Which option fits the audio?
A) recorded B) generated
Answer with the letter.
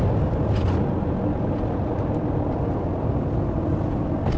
A